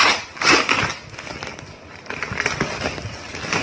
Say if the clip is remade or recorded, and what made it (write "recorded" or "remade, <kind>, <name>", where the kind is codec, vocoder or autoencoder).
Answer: recorded